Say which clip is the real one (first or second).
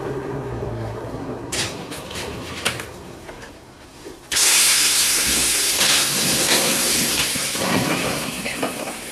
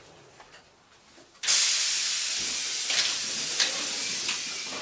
second